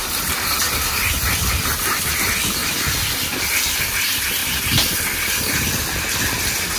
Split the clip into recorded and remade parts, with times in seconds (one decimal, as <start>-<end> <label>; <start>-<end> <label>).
0.0-0.6 recorded; 0.6-4.4 remade; 4.4-6.8 recorded